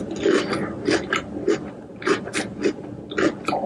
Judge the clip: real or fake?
real